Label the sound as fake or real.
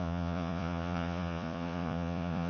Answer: fake